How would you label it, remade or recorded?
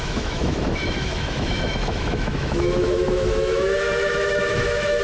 remade